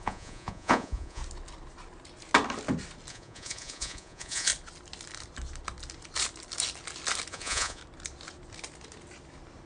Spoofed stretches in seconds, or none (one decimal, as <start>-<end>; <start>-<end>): 0.0-1.2; 3.1-4.5; 7.3-7.8